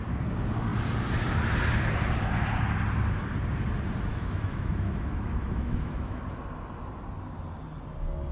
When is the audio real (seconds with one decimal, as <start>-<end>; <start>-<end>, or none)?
0.0-4.1; 6.2-8.3